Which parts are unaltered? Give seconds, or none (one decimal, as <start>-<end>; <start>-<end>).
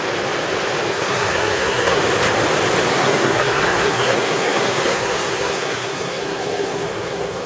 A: 0.0-0.9; 2.0-2.9